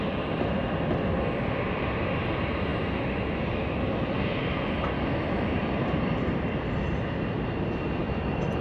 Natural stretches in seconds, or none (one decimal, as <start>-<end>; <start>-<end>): 0.0-8.6